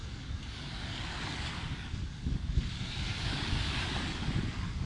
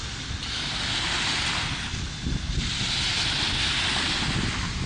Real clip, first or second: second